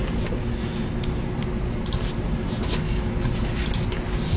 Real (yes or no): yes